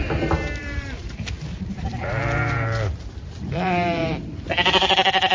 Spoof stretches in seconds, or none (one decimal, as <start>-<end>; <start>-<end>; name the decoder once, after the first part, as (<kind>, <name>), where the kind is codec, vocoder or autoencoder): 0.0-5.3 (vocoder, BigVGAN v2)